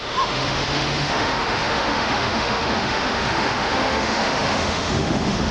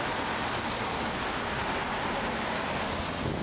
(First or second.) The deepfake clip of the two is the first